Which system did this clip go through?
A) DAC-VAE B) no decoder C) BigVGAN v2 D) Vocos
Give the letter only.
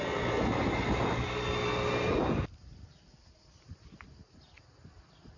B